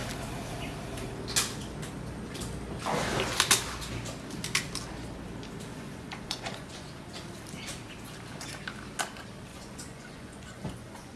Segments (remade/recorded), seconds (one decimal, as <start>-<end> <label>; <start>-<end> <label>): 0.0-5.7 recorded; 5.7-6.9 remade; 6.9-9.5 recorded; 9.5-11.2 remade